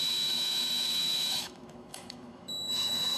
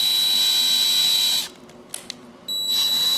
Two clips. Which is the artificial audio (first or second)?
first